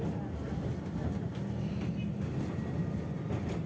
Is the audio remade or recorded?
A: recorded